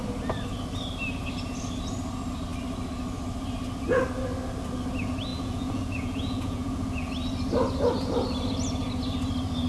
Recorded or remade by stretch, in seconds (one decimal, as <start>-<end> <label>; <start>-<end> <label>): 0.0-5.3 recorded; 5.3-7.1 remade; 7.1-9.7 recorded